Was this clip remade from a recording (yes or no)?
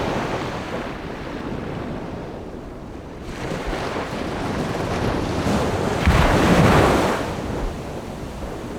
yes